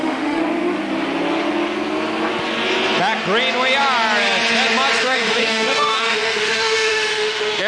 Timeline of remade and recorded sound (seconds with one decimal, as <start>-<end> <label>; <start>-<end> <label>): 0.0-0.4 remade; 0.4-5.0 recorded; 5.0-7.7 remade